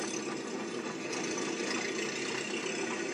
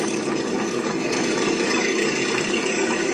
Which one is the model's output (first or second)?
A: second